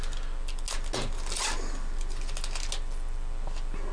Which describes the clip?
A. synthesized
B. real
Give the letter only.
B